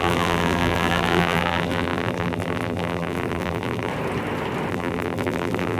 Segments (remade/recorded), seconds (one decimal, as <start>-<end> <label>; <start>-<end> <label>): 0.0-3.9 remade; 3.9-4.7 recorded; 4.7-5.8 remade